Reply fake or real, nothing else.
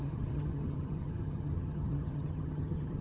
fake